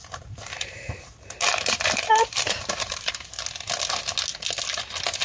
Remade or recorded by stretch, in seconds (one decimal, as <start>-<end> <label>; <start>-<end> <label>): 0.0-3.1 remade; 3.1-5.2 recorded